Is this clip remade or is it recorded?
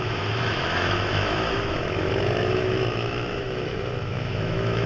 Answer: remade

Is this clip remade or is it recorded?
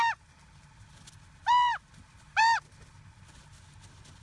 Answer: recorded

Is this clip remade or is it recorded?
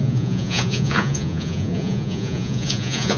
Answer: remade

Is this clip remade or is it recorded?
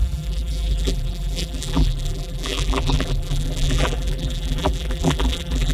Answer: remade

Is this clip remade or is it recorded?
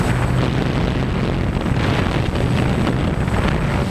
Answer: recorded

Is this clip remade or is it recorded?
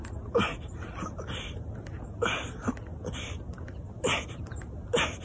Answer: recorded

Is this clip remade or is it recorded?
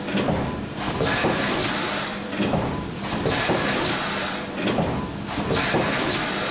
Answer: remade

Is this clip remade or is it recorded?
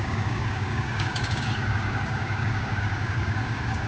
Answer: remade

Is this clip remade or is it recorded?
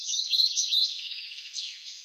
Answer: remade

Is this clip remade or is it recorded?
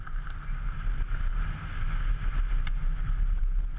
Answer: recorded